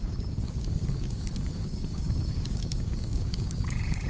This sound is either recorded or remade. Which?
remade